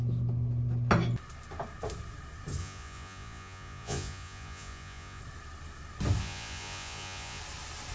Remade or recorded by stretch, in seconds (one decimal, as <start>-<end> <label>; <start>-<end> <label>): 0.0-2.6 recorded; 2.6-5.2 remade; 5.2-6.2 recorded; 6.2-7.4 remade; 7.4-7.9 recorded